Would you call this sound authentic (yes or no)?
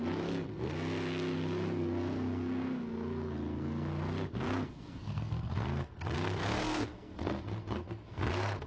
no